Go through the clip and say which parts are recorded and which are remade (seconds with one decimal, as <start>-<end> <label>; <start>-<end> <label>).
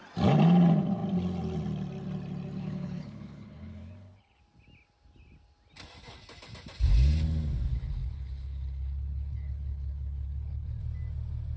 0.0-2.6 recorded; 2.6-4.4 remade; 4.4-7.7 recorded; 7.7-10.8 remade; 10.8-11.6 recorded